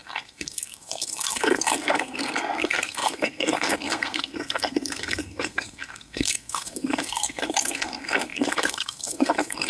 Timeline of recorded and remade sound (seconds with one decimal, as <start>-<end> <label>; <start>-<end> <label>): 0.0-9.7 remade